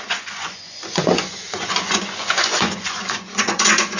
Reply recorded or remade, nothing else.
remade